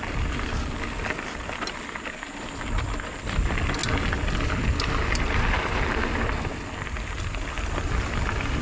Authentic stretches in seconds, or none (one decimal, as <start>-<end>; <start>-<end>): 0.0-8.6